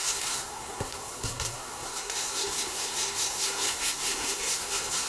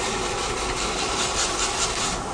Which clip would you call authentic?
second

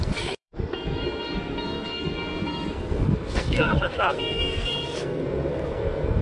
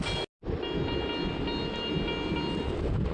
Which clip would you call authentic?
second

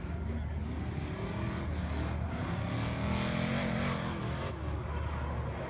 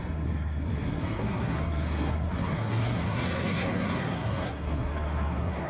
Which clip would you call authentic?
first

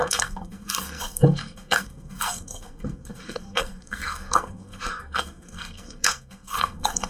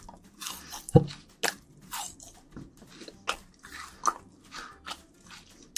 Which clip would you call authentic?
second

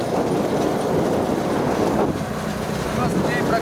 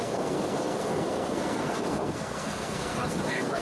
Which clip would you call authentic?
first